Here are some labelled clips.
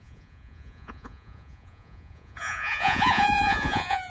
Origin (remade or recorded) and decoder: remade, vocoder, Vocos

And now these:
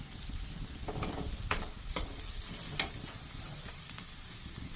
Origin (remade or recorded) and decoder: recorded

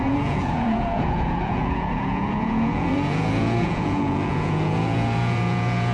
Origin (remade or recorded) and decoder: remade, vocoder, Vocos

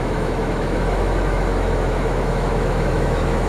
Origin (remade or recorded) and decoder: remade, autoencoder, DAC-VAE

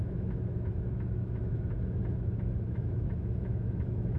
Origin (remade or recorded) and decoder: remade, autoencoder, DAC-VAE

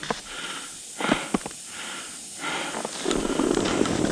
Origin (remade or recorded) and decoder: recorded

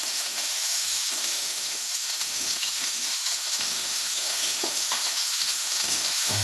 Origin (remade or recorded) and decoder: remade, autoencoder, DAC-VAE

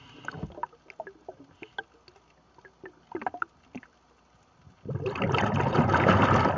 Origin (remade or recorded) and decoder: recorded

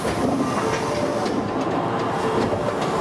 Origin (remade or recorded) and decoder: recorded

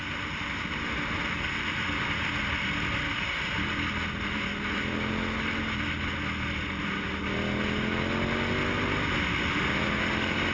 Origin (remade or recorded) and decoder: recorded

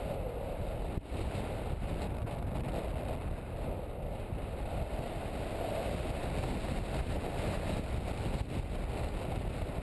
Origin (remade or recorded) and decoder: recorded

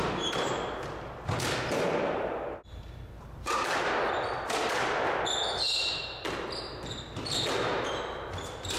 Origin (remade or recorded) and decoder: recorded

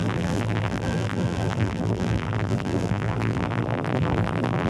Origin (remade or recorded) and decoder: remade, vocoder, BigVGAN v2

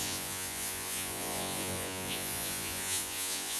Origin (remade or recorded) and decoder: remade, vocoder, Vocos